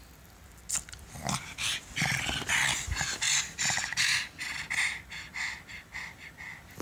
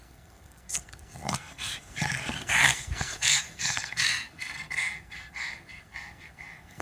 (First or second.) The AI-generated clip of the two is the second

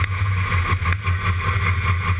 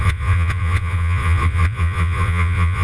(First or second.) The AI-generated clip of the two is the second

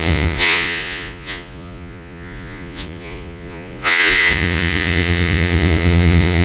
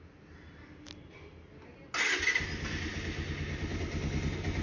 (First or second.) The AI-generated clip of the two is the first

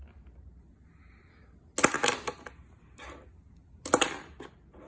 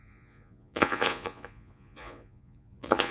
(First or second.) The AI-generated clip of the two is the second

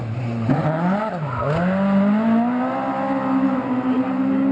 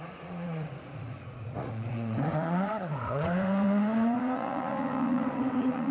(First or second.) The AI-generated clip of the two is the second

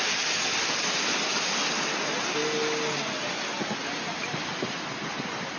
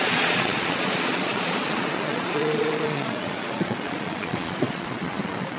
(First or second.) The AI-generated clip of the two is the second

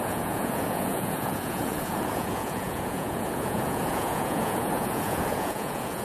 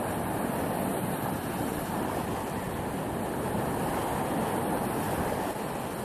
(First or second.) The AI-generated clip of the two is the first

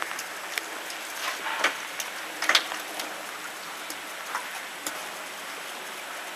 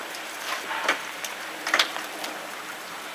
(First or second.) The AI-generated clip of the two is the second